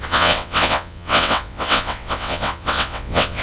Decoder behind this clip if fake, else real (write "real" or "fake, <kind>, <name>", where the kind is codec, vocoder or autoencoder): fake, vocoder, WaveNeXt